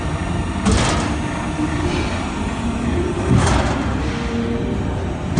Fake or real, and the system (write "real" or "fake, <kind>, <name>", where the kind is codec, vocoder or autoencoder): real